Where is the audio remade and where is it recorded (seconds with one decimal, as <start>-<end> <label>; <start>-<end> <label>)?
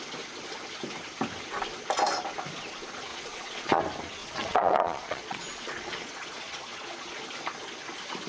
0.0-3.1 recorded; 3.1-3.8 remade; 3.8-4.2 recorded; 4.2-7.2 remade; 7.2-8.3 recorded